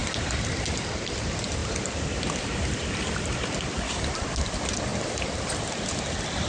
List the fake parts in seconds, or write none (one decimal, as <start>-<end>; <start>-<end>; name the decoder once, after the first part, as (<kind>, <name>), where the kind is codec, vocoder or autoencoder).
none